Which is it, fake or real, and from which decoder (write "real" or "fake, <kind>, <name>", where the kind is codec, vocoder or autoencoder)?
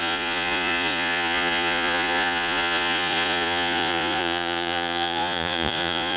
fake, vocoder, Vocos